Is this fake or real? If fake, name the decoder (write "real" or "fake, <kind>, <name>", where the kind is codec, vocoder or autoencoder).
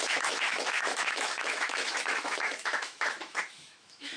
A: fake, autoencoder, DAC-VAE